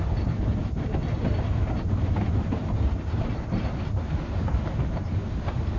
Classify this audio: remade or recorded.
recorded